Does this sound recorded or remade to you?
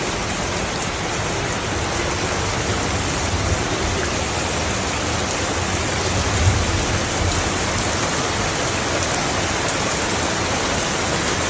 recorded